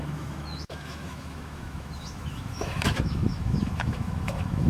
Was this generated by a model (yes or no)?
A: yes